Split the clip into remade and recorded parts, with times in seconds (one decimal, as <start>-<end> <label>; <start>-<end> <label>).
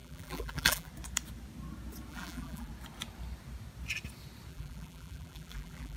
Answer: 0.0-0.9 remade; 0.9-2.1 recorded; 2.1-2.7 remade; 2.7-4.5 recorded; 4.5-6.0 remade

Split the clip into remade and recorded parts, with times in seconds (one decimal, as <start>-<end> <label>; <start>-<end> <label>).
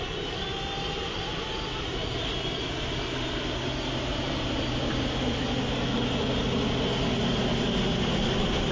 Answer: 0.0-1.9 recorded; 1.9-2.6 remade; 2.6-4.1 recorded; 4.1-4.9 remade; 4.9-8.7 recorded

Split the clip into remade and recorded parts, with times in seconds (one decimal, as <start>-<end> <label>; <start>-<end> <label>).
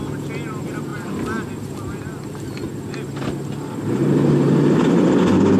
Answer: 0.0-5.6 recorded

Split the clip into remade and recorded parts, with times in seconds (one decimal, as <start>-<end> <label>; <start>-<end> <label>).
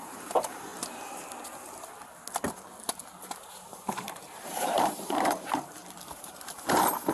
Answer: 0.0-0.7 remade; 0.7-3.7 recorded; 3.7-7.1 remade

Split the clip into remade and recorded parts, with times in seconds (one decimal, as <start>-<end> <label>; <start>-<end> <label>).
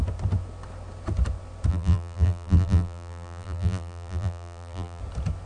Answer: 0.0-1.7 recorded; 1.7-5.0 remade; 5.0-5.5 recorded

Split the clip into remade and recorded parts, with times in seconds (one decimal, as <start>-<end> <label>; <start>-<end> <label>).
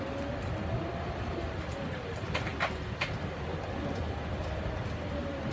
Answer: 0.0-2.5 remade; 2.5-4.4 recorded; 4.4-5.5 remade